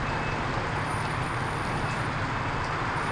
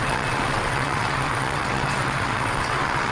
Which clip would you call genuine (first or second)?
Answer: first